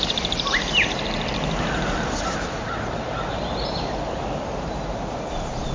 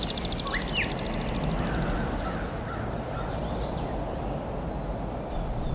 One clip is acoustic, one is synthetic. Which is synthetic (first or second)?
first